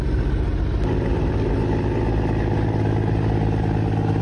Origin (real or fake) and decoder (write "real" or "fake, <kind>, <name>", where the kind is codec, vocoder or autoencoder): real